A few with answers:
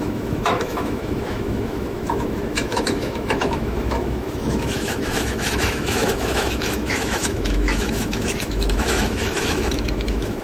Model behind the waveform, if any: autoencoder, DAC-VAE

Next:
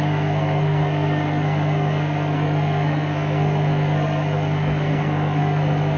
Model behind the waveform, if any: codec, SNAC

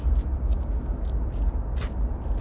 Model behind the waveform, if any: none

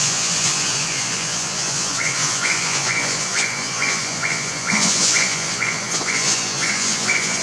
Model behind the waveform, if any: vocoder, Vocos